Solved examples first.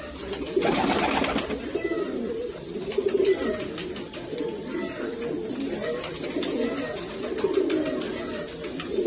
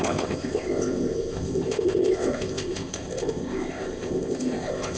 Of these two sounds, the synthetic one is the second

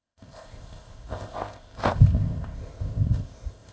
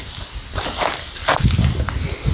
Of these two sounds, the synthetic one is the first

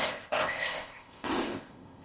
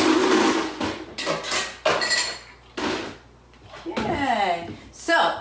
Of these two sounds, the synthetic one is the first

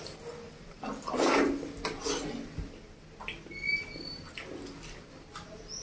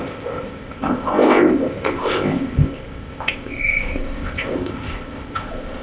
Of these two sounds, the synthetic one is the second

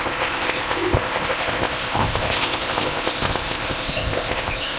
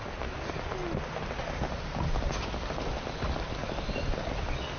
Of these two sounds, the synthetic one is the first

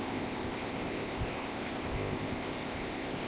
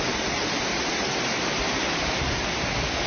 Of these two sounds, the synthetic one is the first